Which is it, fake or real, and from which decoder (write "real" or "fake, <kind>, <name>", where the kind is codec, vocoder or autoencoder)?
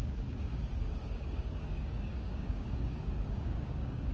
fake, codec, DAC